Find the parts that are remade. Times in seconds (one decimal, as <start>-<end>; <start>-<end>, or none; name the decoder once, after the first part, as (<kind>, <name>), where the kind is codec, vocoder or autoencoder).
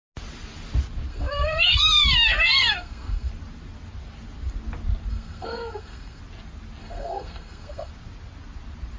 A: 1.1-3.3 (codec, SNAC); 5.1-6.2; 6.8-7.9